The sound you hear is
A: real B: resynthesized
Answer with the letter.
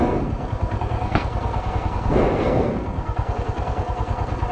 B